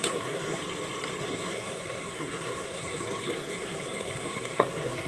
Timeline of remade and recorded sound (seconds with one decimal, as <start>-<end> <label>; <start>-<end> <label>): 0.0-0.6 remade; 0.6-1.2 recorded; 1.2-5.1 remade